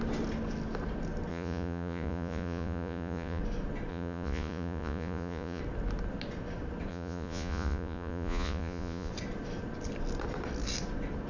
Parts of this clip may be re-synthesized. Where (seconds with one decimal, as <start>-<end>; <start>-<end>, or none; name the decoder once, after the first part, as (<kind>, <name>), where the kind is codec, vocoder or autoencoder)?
1.3-3.4 (vocoder, Vocos); 3.9-5.6; 6.9-9.1